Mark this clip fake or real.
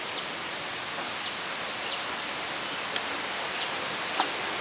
real